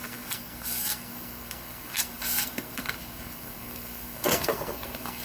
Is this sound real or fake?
fake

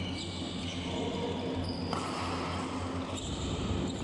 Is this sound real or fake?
real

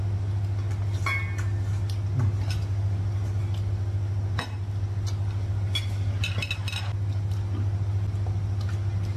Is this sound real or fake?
real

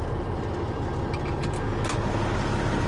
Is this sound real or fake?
real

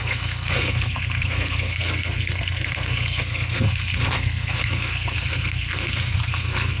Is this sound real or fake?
fake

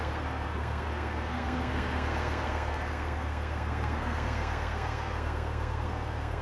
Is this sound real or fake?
fake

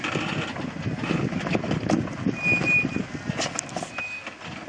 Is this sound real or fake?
real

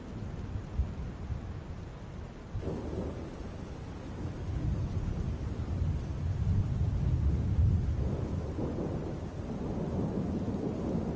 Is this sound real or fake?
real